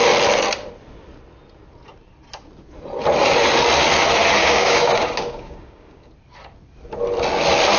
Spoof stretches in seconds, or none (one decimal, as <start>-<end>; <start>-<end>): 4.4-6.1